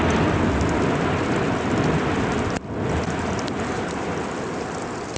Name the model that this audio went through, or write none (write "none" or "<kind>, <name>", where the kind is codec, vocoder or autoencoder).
none